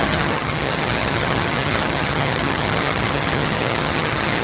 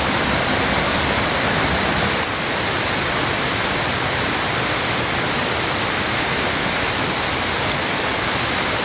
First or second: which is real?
second